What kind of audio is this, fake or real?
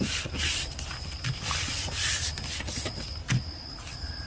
real